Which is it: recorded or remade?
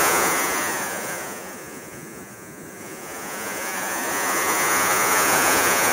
remade